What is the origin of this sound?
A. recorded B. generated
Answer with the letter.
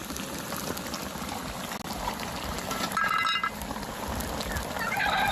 A